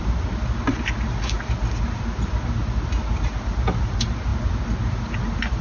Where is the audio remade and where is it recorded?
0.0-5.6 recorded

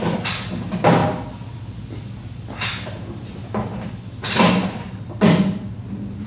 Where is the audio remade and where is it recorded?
0.0-6.3 recorded

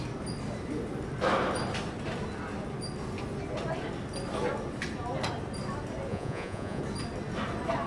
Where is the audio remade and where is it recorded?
0.0-6.1 recorded; 6.1-6.8 remade; 6.8-7.9 recorded

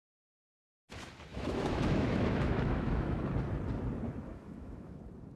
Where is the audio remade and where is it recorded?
0.0-1.3 recorded; 1.3-3.2 remade; 3.2-4.3 recorded; 4.3-5.0 remade; 5.0-5.4 recorded

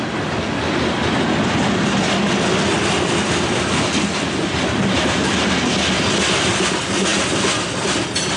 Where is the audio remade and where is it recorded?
0.0-8.4 recorded

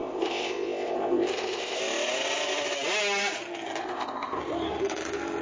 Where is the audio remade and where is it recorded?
0.0-1.8 remade; 1.8-3.8 recorded; 3.8-4.4 remade; 4.4-5.4 recorded

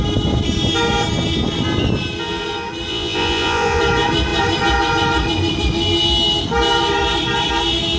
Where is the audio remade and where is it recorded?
0.0-2.9 recorded; 2.9-3.8 remade; 3.8-8.0 recorded

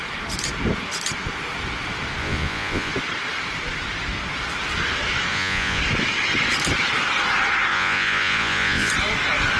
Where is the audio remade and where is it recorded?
0.0-2.2 recorded; 2.2-2.9 remade; 2.9-5.3 recorded; 5.3-5.8 remade; 5.8-7.7 recorded; 7.7-8.9 remade; 8.9-9.6 recorded